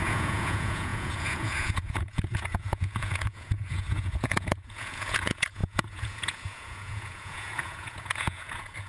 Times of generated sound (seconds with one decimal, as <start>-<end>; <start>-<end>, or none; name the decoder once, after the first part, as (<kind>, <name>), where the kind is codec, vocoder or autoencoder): 0.0-8.9 (vocoder, Vocos)